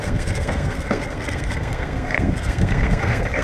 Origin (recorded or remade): remade